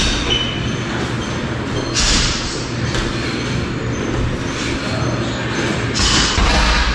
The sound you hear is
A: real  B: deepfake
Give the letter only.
A